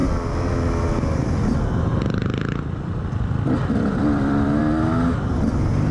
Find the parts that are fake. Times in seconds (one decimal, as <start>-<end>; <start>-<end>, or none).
1.9-4.6